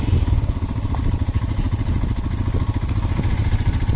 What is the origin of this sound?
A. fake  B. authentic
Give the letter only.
B